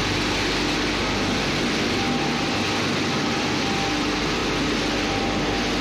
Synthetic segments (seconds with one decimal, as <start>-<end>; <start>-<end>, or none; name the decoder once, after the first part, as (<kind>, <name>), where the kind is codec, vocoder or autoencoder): none